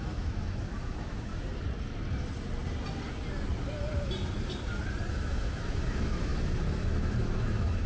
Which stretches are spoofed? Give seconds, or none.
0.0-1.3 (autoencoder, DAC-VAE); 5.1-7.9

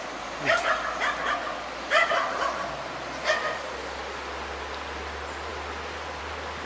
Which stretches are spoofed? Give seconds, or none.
none

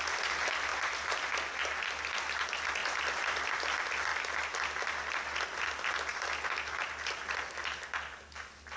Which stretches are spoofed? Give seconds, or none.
0.7-1.3 (vocoder, BigVGAN v2); 2.8-3.5